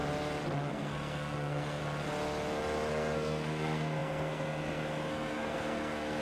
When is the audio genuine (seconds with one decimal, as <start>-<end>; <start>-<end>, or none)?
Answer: 0.0-0.7; 1.8-2.9